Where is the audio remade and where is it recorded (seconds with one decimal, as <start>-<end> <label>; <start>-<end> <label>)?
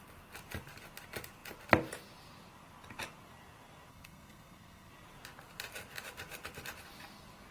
0.0-3.9 recorded; 3.9-4.9 remade; 4.9-7.5 recorded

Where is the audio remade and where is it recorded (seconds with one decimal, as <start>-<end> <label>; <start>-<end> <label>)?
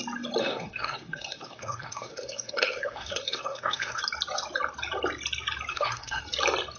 0.0-0.4 recorded; 0.4-4.0 remade; 4.0-5.7 recorded; 5.7-6.2 remade; 6.2-6.8 recorded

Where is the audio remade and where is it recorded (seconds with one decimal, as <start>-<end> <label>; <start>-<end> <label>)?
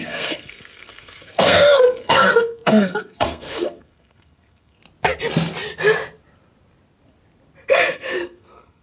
0.0-4.8 remade; 4.8-7.7 recorded; 7.7-8.8 remade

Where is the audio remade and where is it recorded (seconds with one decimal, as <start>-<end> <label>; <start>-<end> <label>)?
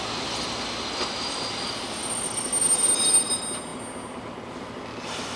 0.0-5.4 recorded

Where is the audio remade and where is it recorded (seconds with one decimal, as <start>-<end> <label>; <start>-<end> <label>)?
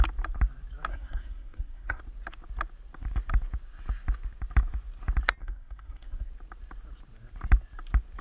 0.0-0.9 recorded; 0.9-2.0 remade; 2.0-5.4 recorded; 5.4-6.3 remade; 6.3-8.2 recorded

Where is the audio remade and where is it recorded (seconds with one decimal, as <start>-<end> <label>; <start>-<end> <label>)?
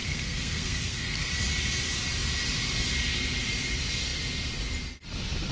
0.0-1.3 remade; 1.3-5.5 recorded